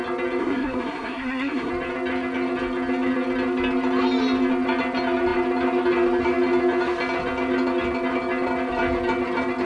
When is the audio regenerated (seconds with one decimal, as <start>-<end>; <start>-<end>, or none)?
0.4-1.7